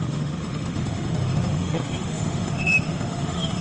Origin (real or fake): fake